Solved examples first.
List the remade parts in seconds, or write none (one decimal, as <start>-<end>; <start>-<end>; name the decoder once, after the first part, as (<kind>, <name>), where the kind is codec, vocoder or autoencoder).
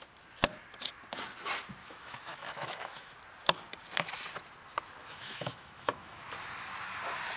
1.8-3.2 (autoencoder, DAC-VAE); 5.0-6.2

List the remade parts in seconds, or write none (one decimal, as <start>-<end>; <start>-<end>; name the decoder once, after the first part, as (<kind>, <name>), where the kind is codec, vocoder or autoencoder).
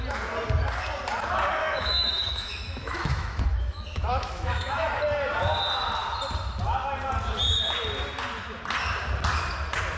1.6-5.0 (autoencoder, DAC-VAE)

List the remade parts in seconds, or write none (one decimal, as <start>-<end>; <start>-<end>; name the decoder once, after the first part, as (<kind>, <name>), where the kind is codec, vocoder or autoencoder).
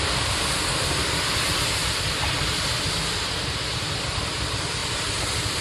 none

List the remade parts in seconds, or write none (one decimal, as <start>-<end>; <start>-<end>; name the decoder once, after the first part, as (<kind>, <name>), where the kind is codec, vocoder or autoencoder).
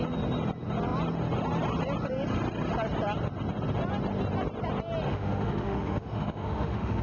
5.1-7.0 (autoencoder, DAC-VAE)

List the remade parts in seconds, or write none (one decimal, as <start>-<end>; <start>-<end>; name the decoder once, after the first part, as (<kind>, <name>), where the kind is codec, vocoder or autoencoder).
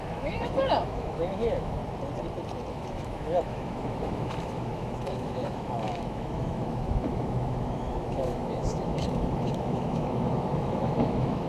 0.0-1.8 (autoencoder, DAC-VAE); 2.7-11.5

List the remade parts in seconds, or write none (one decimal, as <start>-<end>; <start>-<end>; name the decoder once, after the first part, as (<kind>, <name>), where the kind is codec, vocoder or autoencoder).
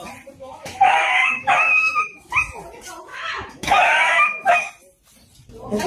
0.4-2.3 (autoencoder, DAC-VAE); 3.1-4.7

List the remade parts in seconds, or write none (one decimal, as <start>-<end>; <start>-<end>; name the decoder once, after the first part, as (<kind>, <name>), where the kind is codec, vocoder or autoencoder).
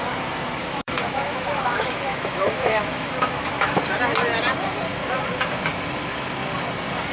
0.6-3.8 (autoencoder, DAC-VAE)